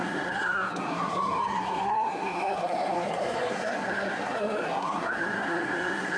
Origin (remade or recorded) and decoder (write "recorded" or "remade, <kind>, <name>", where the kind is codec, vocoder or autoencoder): remade, codec, SNAC